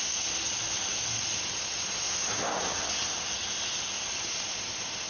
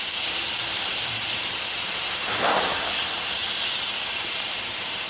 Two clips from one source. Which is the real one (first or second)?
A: first